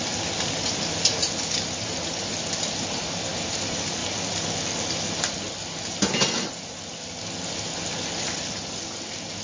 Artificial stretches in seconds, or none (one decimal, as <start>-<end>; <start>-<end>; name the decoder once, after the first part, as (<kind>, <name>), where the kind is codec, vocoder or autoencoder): none